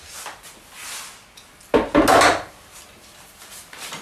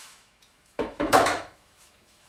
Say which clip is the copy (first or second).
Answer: second